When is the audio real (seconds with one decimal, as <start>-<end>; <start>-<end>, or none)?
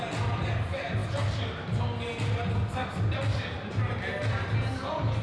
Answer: 0.0-5.2